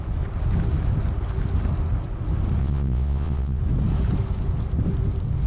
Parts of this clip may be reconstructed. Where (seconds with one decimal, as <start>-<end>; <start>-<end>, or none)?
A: 2.6-3.6